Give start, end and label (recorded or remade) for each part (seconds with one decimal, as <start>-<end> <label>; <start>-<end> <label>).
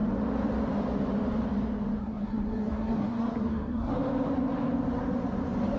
0.0-2.0 recorded; 2.0-3.9 remade; 3.9-5.8 recorded